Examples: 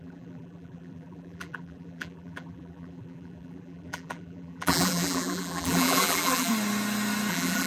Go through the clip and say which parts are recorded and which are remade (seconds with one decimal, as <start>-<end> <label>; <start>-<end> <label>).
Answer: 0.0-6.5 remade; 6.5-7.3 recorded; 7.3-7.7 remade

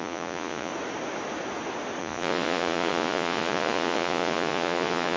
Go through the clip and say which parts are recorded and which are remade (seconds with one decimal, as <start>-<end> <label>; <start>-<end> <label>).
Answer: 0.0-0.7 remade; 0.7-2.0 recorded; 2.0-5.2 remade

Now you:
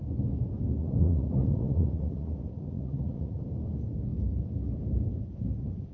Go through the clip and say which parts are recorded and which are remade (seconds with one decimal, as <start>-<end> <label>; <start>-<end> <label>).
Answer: 0.0-0.8 recorded; 0.8-3.4 remade; 3.4-5.9 recorded

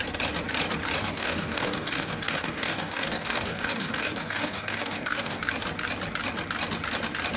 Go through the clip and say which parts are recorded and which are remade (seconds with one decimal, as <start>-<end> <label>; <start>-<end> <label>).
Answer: 0.0-1.0 recorded; 1.0-5.4 remade; 5.4-7.4 recorded